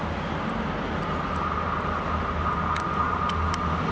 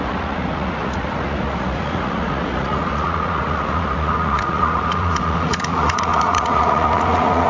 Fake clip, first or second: second